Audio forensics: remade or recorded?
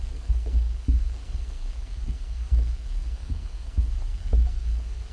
remade